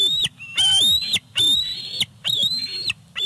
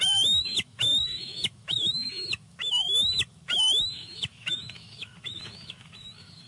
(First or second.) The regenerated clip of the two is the second